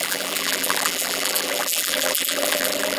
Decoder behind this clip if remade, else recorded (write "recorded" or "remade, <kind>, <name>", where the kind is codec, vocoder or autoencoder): remade, vocoder, BigVGAN v2